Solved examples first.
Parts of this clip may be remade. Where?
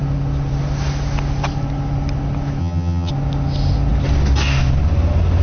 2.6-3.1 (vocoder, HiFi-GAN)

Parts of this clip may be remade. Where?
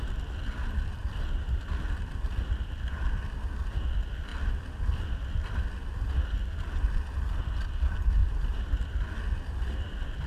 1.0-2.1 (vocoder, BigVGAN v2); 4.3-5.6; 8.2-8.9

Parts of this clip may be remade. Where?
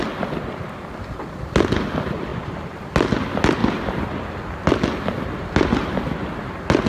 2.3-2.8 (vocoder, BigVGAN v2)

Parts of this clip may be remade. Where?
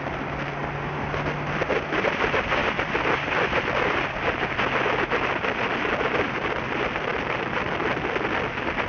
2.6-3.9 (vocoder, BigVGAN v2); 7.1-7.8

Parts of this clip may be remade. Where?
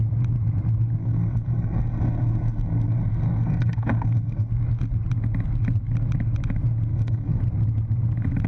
1.0-4.5 (codec, SNAC); 6.9-7.4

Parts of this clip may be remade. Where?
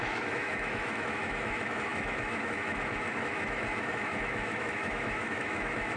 0.0-6.0 (autoencoder, DAC-VAE)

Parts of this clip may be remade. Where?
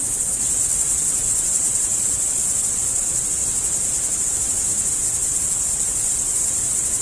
0.0-3.4 (vocoder, WaveNeXt); 4.9-7.0